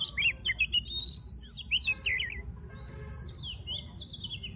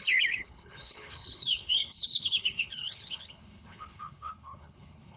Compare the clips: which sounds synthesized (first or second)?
second